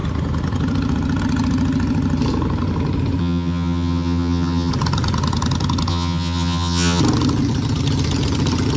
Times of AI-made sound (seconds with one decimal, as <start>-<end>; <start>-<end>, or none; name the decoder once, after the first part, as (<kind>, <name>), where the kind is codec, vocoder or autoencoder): 3.2-4.7 (vocoder, HiFi-GAN); 5.9-7.0